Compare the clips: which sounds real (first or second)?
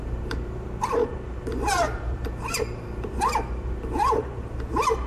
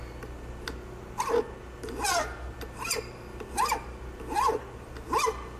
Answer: second